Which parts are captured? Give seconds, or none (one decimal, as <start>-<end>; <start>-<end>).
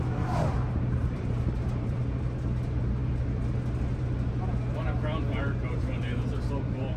0.0-1.0; 2.0-7.0